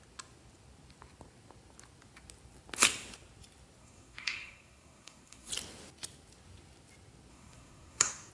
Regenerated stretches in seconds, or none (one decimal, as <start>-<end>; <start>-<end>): 3.8-5.5; 7.3-8.3